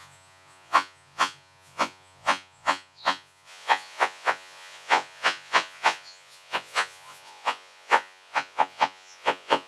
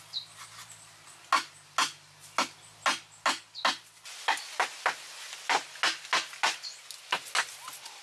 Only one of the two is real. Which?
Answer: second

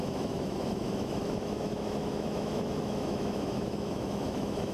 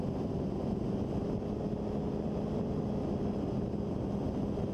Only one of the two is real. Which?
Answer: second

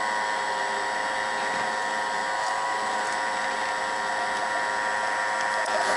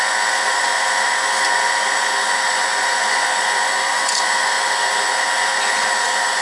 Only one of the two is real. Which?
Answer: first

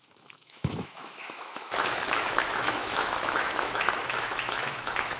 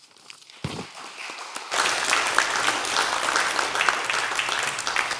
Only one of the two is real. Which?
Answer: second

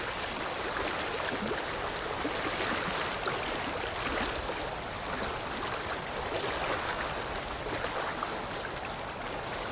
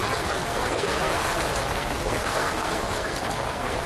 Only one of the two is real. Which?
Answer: first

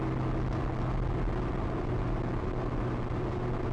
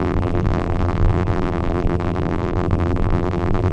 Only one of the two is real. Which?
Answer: first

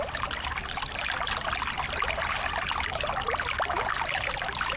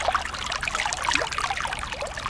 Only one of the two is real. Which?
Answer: second